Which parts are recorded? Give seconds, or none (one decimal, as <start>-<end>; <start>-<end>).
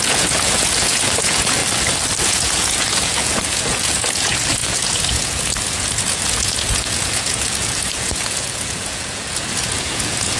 1.6-2.2